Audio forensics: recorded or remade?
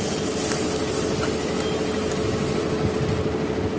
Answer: recorded